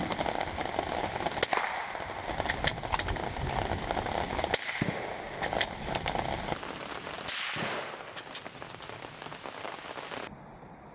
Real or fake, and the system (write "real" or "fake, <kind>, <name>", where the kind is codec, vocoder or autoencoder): real